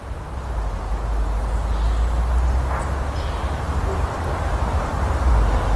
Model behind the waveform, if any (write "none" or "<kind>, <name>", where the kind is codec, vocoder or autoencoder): none